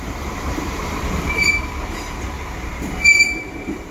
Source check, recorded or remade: remade